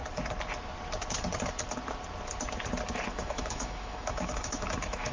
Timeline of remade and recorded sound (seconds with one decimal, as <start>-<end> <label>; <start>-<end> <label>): 0.0-3.1 recorded; 3.1-5.1 remade

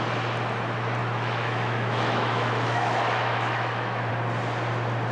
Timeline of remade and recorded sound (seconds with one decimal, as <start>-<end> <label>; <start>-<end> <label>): 0.0-1.0 recorded; 1.0-4.1 remade; 4.1-5.1 recorded

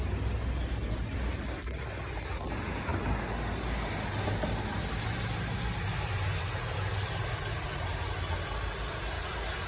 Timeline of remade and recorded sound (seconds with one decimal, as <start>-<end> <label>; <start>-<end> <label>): 0.0-9.7 recorded

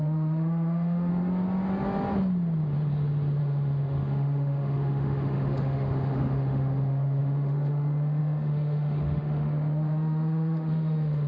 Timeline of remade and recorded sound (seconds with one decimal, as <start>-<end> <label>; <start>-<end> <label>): 0.0-1.1 remade; 1.1-3.4 recorded; 3.4-11.3 remade

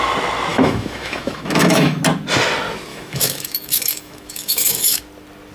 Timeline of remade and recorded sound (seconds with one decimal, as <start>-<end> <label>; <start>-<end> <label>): 0.0-0.5 recorded; 0.5-2.0 remade; 2.0-2.9 recorded; 2.9-5.0 remade; 5.0-5.5 recorded

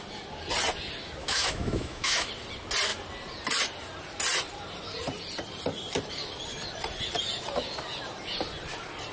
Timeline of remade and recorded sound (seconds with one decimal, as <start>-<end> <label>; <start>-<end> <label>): 0.0-1.2 recorded; 1.2-2.3 remade; 2.3-9.1 recorded

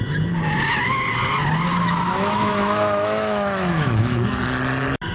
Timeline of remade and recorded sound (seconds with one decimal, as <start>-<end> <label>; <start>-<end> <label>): 0.0-1.7 recorded; 1.7-4.4 remade; 4.4-5.1 recorded

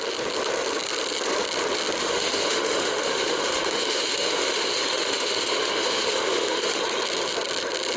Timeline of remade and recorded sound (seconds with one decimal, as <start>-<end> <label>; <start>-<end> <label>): 0.0-2.0 recorded; 2.0-6.8 remade; 6.8-8.0 recorded